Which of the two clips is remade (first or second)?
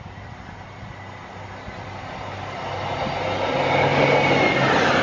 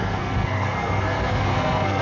second